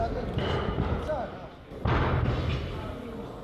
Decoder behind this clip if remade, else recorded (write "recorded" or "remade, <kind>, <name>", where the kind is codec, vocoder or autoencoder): recorded